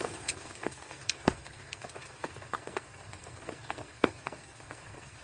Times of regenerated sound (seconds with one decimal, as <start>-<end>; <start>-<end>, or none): 0.0-5.2